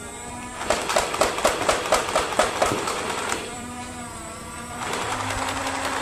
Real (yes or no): no